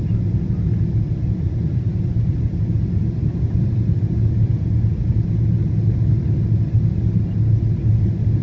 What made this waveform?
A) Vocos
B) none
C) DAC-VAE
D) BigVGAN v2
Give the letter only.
B